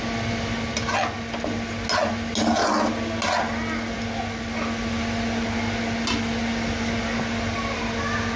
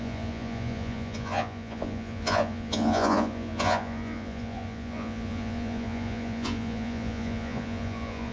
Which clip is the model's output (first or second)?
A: second